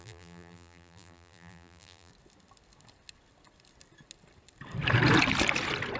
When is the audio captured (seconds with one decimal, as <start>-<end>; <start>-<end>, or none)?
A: 2.1-6.0